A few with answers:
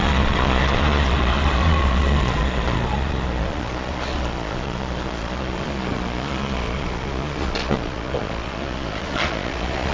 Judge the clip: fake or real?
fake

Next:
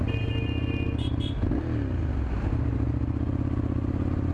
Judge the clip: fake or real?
real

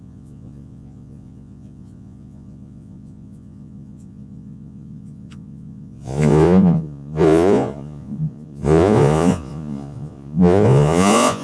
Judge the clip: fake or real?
fake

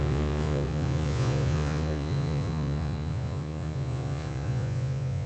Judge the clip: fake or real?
fake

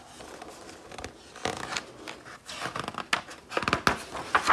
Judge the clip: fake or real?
real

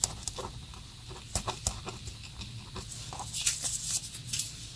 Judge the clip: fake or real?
real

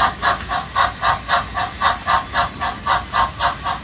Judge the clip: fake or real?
real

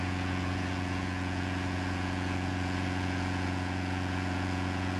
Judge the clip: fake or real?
fake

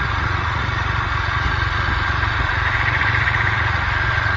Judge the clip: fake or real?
fake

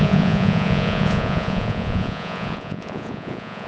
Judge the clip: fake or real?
fake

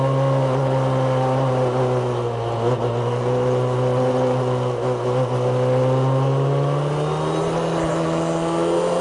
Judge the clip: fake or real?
real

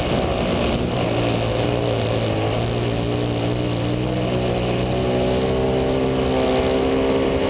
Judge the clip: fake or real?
real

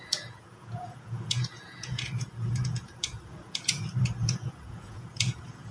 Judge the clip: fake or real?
fake